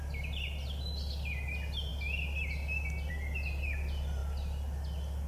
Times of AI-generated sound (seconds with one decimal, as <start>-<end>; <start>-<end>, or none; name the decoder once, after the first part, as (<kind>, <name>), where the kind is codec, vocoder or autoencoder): none